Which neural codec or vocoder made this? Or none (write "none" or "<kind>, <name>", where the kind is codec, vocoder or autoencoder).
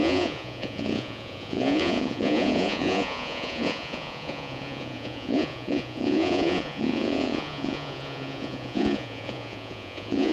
vocoder, Vocos